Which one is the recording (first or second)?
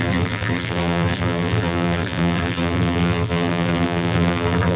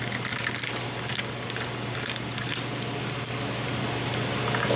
second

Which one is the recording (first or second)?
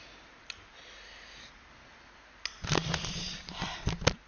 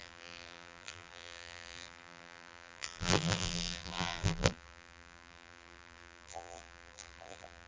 first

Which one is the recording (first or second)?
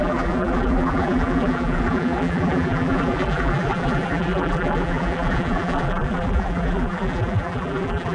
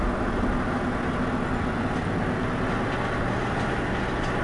second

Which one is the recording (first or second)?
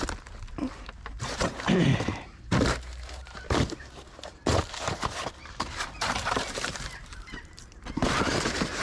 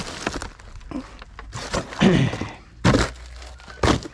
second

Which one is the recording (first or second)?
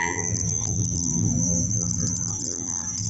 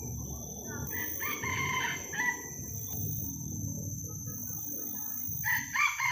second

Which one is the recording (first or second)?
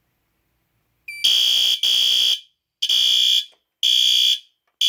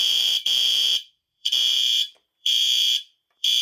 first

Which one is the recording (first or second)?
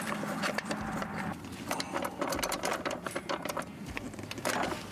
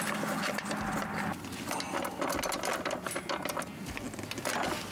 second